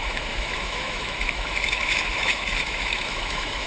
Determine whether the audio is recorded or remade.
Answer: remade